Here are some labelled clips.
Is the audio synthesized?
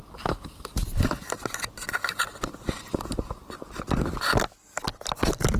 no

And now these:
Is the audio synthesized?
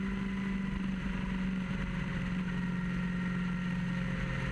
no